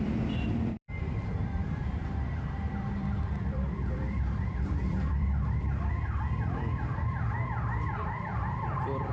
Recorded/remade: remade